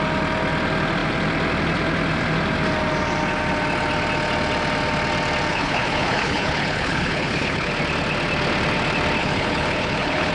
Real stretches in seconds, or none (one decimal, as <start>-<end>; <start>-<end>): 0.0-5.5; 7.7-9.2